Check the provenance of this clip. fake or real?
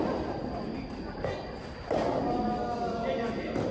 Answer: real